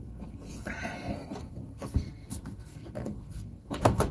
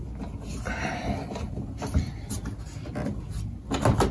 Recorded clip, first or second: second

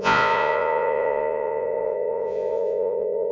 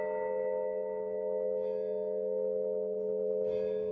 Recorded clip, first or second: second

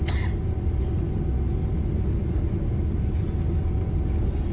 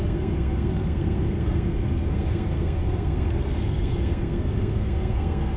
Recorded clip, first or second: first